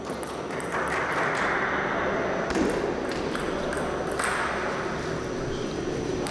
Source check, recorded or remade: recorded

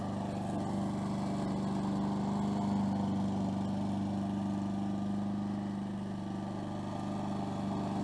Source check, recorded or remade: recorded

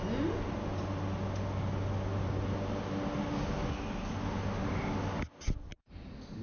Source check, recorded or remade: recorded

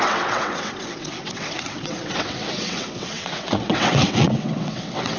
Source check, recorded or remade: remade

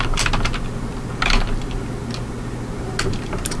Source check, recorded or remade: recorded